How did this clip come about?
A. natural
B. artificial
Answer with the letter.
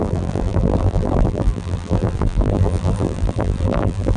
B